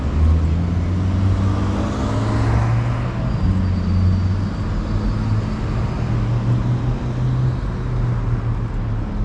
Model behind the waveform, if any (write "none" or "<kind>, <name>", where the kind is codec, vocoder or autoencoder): none